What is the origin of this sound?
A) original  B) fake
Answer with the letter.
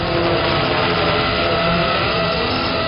A